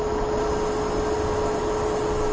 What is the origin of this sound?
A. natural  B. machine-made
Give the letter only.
A